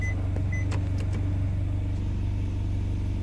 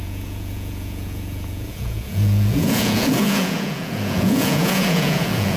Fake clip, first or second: second